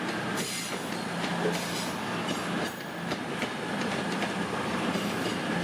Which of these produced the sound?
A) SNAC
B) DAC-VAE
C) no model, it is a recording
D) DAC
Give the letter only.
C